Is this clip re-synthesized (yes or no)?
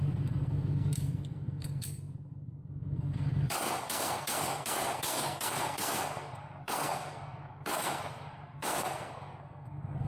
yes